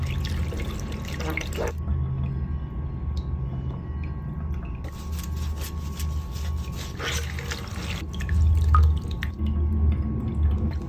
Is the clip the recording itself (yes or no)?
yes